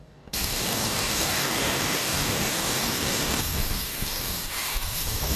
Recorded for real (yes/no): no